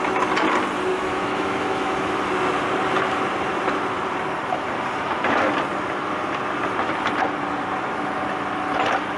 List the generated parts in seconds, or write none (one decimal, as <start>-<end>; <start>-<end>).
0.9-2.2